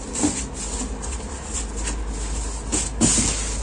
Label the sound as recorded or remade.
recorded